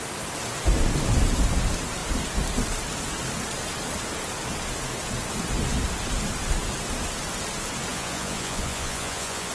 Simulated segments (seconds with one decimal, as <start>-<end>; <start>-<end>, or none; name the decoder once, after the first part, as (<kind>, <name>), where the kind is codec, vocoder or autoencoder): 7.9-9.5 (vocoder, Vocos)